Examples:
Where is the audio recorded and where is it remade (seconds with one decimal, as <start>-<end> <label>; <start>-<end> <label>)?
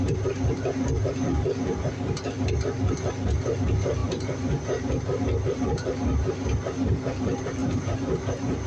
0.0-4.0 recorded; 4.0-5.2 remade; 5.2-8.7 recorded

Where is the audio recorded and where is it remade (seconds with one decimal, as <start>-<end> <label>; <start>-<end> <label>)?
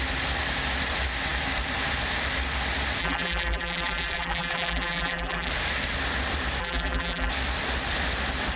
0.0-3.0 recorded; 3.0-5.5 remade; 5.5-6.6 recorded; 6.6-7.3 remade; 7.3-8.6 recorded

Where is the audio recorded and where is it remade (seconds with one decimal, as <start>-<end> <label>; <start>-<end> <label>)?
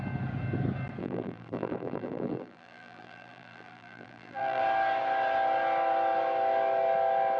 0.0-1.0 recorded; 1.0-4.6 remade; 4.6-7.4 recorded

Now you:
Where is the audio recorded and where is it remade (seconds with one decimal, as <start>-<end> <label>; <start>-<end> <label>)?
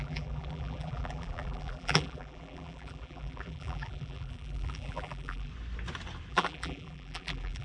0.0-5.5 remade; 5.5-6.3 recorded; 6.3-7.6 remade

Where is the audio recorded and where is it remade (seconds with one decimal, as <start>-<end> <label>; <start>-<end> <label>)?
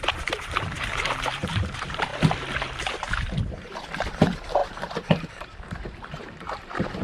0.0-2.1 remade; 2.1-3.5 recorded; 3.5-7.0 remade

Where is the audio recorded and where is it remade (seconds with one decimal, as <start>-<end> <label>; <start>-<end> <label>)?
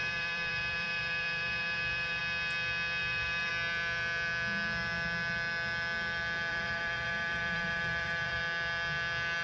0.0-2.2 remade; 2.2-3.0 recorded; 3.0-3.5 remade; 3.5-6.5 recorded; 6.5-8.4 remade; 8.4-9.4 recorded